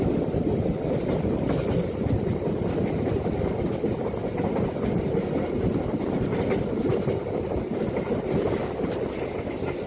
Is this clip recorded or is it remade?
recorded